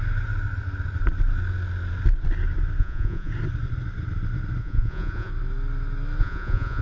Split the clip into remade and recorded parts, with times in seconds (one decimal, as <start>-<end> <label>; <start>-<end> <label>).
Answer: 0.0-2.8 recorded; 2.8-3.3 remade; 3.3-4.6 recorded; 4.6-5.3 remade; 5.3-6.2 recorded; 6.2-6.8 remade